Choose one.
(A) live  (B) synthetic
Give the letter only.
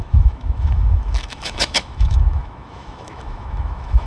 B